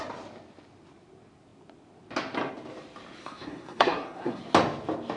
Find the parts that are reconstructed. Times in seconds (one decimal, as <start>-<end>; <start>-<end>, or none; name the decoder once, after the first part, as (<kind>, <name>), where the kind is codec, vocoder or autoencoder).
3.2-4.4 (codec, SNAC)